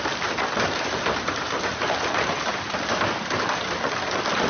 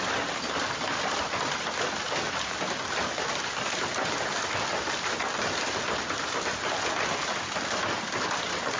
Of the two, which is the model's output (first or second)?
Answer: first